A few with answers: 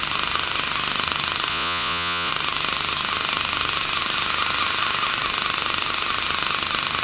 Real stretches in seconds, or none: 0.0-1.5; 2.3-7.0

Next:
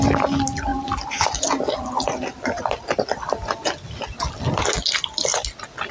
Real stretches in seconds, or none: 0.0-5.9

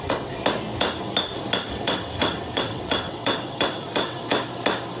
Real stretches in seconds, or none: 0.4-1.7; 4.3-5.0

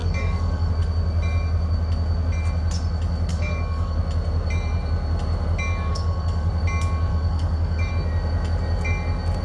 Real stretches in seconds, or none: 0.7-3.3; 4.0-5.9; 6.5-7.1; 7.9-9.4

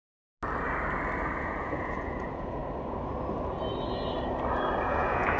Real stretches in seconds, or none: 0.0-1.3; 2.6-4.8